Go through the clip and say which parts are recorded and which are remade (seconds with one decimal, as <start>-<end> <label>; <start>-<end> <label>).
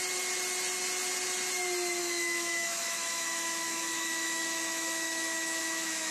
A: 0.0-2.0 recorded; 2.0-6.1 remade